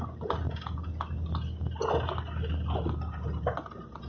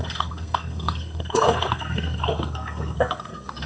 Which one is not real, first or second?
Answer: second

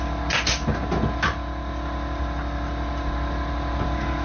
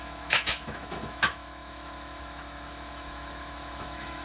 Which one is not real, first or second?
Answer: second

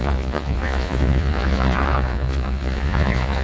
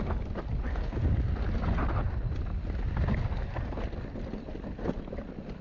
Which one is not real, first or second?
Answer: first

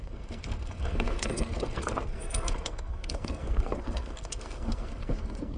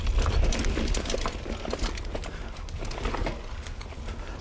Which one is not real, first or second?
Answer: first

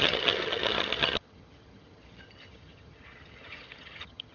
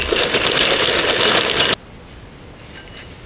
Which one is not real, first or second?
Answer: first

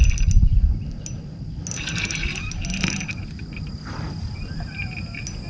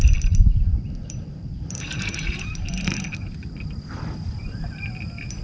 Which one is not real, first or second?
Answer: second